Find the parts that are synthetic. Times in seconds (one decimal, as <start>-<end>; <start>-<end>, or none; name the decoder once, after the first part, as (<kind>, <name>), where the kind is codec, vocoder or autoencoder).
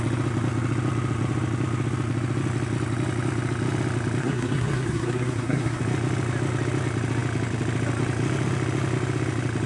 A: 4.2-5.8 (codec, SNAC)